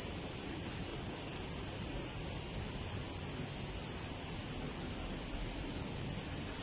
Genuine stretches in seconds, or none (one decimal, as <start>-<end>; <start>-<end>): 0.0-6.6